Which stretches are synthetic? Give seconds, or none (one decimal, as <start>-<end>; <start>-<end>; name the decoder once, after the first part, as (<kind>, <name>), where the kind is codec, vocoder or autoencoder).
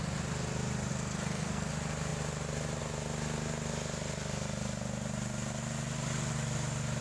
0.9-1.7 (codec, SNAC)